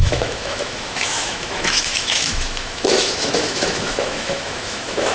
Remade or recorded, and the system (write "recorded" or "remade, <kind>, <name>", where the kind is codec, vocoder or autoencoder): remade, autoencoder, DAC-VAE